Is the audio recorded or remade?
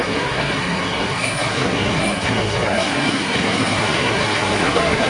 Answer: remade